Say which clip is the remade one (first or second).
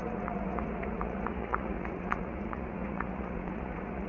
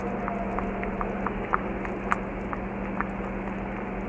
first